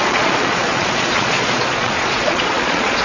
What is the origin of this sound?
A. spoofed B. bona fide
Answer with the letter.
A